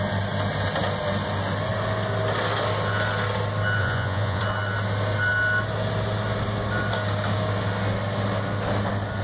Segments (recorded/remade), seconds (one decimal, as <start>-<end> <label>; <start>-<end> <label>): 0.0-3.8 recorded; 3.8-4.4 remade; 4.4-9.2 recorded